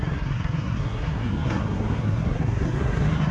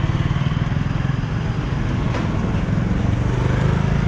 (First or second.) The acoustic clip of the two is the second